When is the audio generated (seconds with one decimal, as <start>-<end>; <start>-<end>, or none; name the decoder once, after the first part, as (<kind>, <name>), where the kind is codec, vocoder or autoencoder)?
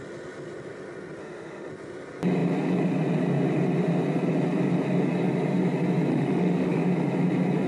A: 1.2-1.7 (autoencoder, DAC-VAE); 6.1-6.8